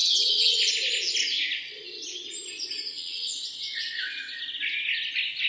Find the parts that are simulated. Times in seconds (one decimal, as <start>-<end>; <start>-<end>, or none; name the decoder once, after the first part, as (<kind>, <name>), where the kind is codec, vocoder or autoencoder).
0.0-0.7 (vocoder, WaveNeXt); 2.9-4.4